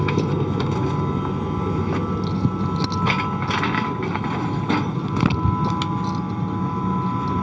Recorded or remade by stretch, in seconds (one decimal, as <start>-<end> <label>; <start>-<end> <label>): 0.0-7.4 recorded

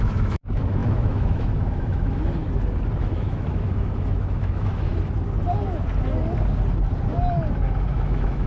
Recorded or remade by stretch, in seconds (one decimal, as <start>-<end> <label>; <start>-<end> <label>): 0.0-2.4 remade; 2.4-3.0 recorded; 3.0-4.9 remade; 4.9-7.9 recorded; 7.9-8.5 remade

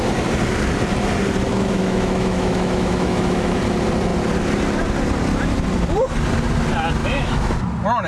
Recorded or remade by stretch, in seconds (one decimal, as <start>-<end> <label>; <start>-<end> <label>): 0.0-1.5 recorded; 1.5-3.6 remade; 3.6-7.0 recorded; 7.0-7.5 remade; 7.5-8.1 recorded

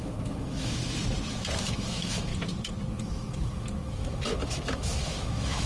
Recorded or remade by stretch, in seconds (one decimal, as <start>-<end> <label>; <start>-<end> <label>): 0.0-0.8 remade; 0.8-1.6 recorded; 1.6-2.3 remade; 2.3-2.9 recorded; 2.9-5.7 remade

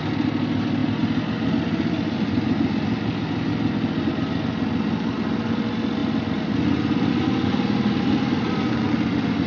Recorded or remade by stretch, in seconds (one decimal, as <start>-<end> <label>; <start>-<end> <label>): 0.0-9.5 recorded